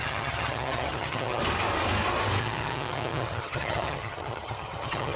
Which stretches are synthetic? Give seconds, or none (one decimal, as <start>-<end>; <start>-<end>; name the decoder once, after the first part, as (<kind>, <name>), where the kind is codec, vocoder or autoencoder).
0.0-1.4 (vocoder, HiFi-GAN); 2.4-5.2